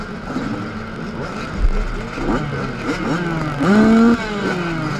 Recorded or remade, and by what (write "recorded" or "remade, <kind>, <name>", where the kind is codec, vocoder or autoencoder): recorded